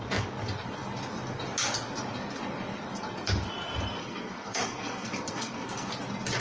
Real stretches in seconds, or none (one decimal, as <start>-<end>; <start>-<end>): 0.0-4.0; 5.9-6.4